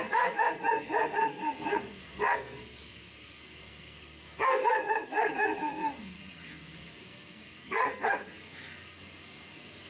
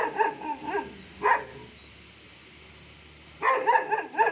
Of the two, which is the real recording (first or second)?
second